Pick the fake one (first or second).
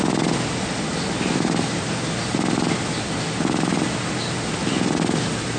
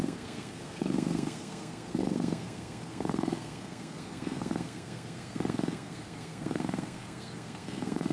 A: second